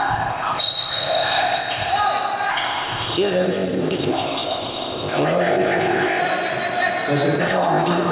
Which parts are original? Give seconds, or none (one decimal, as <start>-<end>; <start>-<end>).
1.9-2.5; 6.2-7.4